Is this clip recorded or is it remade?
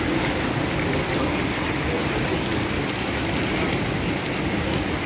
recorded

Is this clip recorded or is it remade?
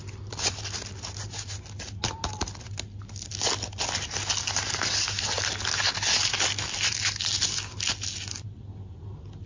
recorded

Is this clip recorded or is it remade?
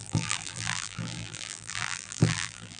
remade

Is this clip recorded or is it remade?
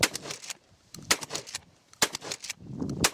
recorded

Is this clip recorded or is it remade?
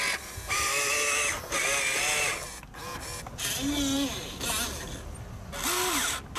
recorded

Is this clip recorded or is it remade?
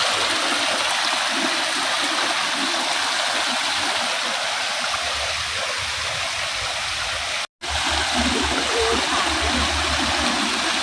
recorded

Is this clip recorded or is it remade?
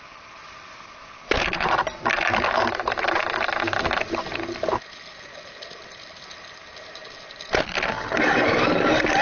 recorded